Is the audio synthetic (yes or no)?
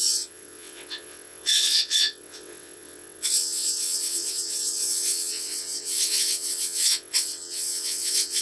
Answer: yes